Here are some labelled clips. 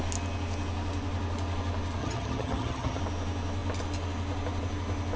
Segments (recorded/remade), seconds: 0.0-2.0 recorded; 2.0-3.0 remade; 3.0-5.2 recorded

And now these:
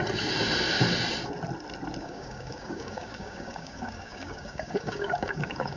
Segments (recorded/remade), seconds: 0.0-2.0 recorded; 2.0-5.8 remade

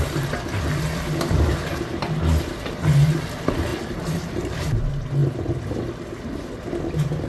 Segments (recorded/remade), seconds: 0.0-3.7 recorded; 3.7-4.7 remade; 4.7-7.3 recorded

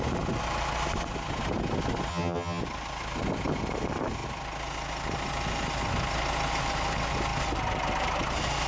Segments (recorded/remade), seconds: 0.0-2.1 recorded; 2.1-2.6 remade; 2.6-8.7 recorded

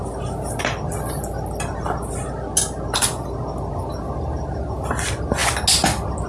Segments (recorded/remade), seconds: 0.0-6.3 recorded

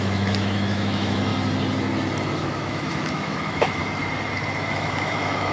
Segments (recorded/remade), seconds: 0.0-1.3 remade; 1.3-2.4 recorded; 2.4-3.8 remade; 3.8-4.7 recorded; 4.7-5.5 remade

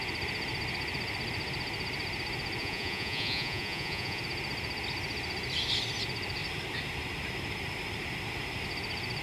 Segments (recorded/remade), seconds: 0.0-2.6 recorded; 2.6-4.2 remade; 4.2-9.2 recorded

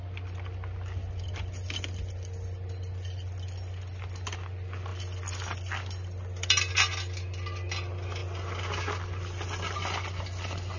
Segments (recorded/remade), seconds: 0.0-10.8 recorded